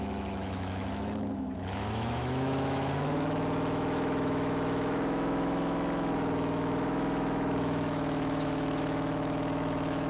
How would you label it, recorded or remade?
remade